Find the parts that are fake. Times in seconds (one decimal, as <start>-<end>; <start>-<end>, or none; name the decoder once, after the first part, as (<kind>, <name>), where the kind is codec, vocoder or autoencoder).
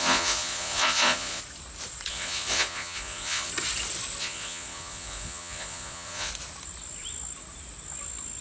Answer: 0.0-1.4 (vocoder, Vocos); 2.1-3.5; 4.2-6.3